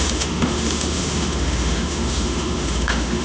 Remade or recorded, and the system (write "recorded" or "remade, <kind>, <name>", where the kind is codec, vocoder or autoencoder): remade, autoencoder, DAC-VAE